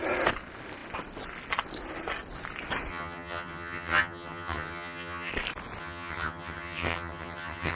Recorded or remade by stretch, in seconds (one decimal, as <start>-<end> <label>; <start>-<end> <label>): 0.0-2.9 recorded; 2.9-5.3 remade; 5.3-5.8 recorded; 5.8-7.8 remade